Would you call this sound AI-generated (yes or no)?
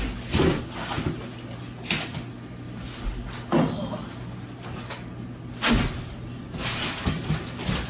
no